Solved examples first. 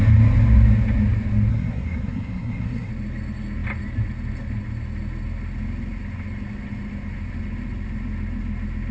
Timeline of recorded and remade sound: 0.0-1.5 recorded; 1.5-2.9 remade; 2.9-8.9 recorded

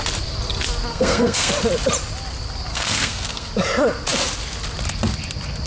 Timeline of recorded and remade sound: 0.0-0.9 recorded; 0.9-1.5 remade; 1.5-2.7 recorded; 2.7-3.5 remade; 3.5-5.7 recorded

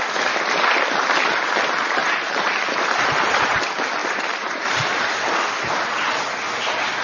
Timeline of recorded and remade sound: 0.0-2.0 recorded; 2.0-3.6 remade; 3.6-4.0 recorded; 4.0-5.4 remade; 5.4-7.0 recorded